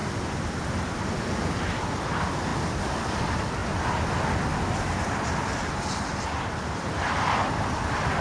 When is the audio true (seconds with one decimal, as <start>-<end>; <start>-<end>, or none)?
0.0-8.2